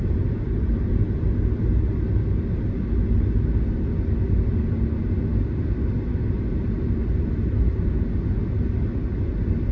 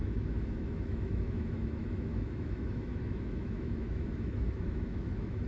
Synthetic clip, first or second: second